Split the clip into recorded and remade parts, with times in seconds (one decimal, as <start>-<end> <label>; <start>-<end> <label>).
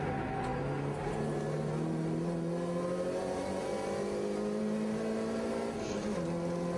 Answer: 0.0-6.8 recorded